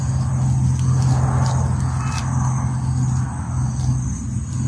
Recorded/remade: recorded